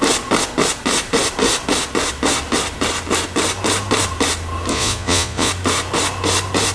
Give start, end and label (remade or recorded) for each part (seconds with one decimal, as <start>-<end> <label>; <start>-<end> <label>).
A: 0.0-4.7 recorded; 4.7-5.5 remade; 5.5-6.7 recorded